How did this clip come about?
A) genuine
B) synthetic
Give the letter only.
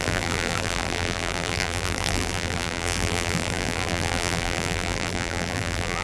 B